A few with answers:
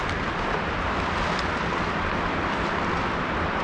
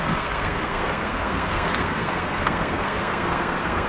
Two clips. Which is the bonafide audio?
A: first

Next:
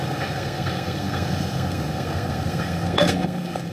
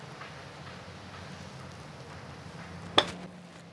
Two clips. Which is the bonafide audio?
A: second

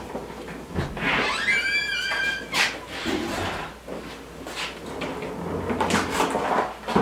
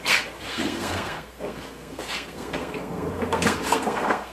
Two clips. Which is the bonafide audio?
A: first